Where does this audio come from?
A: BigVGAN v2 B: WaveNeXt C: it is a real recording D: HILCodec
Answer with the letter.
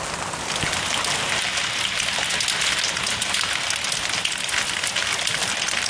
C